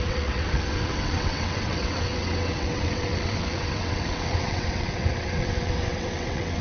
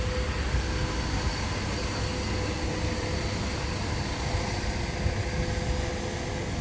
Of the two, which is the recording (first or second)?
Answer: second